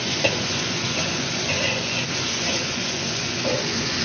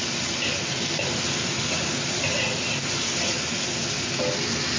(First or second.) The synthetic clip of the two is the first